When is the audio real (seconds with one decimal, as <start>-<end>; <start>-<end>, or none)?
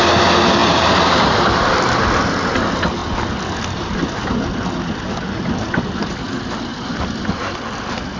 0.0-8.2